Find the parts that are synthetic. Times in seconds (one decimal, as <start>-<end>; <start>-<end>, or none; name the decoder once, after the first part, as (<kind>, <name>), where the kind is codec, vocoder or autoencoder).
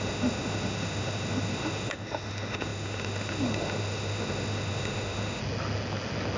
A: 0.0-5.4 (autoencoder, DAC-VAE)